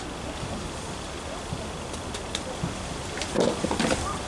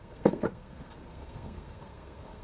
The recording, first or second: first